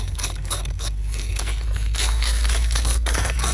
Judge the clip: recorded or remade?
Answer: remade